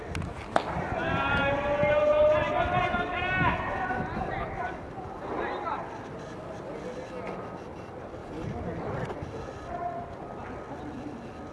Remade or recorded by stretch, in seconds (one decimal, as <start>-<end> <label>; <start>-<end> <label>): 0.0-8.2 recorded; 8.2-9.1 remade; 9.1-11.5 recorded